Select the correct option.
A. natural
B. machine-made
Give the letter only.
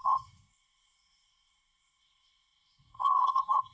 B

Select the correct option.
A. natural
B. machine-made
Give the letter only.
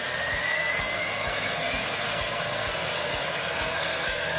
B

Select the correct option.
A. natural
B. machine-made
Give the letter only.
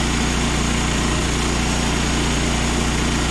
A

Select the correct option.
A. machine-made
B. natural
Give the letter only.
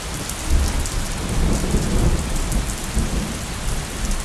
B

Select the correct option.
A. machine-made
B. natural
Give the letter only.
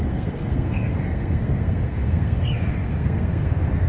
A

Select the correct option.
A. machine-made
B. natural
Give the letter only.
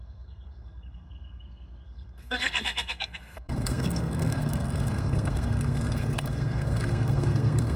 A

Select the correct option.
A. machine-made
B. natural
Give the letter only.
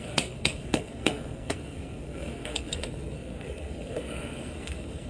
A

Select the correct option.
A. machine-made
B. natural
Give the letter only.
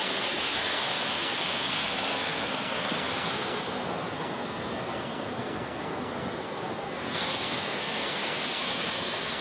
A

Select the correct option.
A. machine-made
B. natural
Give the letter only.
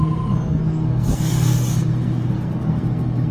A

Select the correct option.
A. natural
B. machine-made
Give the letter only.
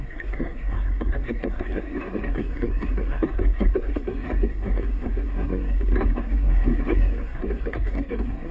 B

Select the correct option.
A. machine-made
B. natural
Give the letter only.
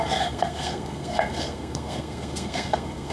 A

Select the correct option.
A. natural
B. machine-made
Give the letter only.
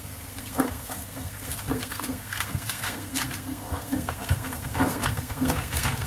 B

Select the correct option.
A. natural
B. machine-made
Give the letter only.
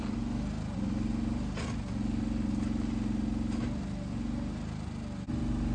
A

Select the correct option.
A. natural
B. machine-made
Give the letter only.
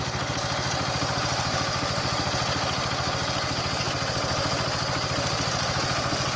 A